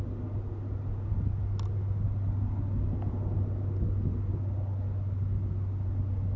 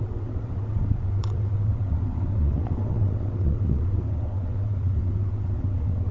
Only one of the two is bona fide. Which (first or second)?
first